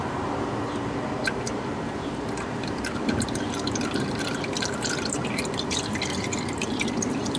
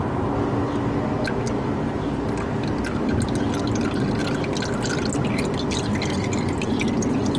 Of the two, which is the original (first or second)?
second